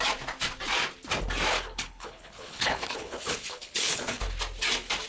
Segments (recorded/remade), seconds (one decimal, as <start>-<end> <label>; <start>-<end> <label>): 0.0-1.5 recorded; 1.5-4.2 remade; 4.2-5.1 recorded